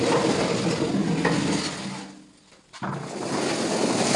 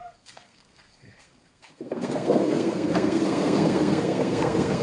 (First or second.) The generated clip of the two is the second